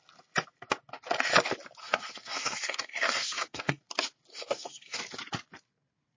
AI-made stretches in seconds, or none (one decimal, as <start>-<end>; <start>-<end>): 1.8-3.8; 4.3-5.0